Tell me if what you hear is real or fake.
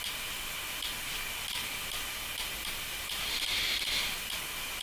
real